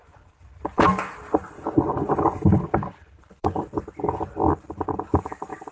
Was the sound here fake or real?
fake